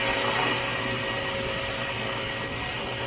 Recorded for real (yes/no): yes